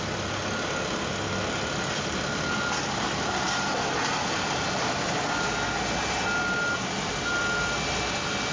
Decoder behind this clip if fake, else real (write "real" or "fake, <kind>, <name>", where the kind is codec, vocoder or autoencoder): real